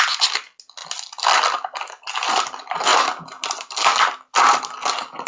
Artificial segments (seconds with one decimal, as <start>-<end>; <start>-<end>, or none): none